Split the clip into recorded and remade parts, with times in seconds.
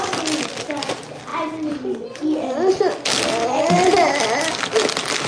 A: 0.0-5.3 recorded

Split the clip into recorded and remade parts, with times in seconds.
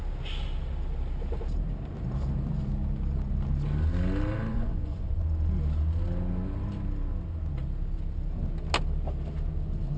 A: 0.0-4.5 recorded; 4.5-5.2 remade; 5.2-10.0 recorded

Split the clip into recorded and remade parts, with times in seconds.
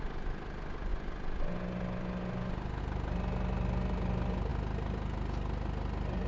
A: 0.0-6.3 recorded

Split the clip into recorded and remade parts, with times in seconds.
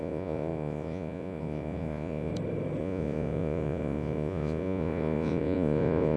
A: 0.0-2.3 remade; 2.3-2.8 recorded; 2.8-6.2 remade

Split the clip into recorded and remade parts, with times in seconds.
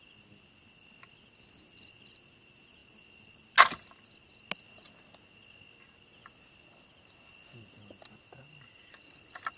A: 0.0-9.6 recorded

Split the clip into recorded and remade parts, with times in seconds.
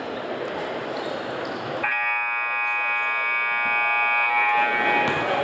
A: 0.0-5.4 recorded